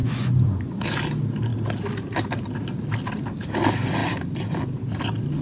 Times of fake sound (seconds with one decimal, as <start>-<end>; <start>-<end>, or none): 0.0-0.8